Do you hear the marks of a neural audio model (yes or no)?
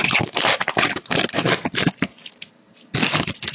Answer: yes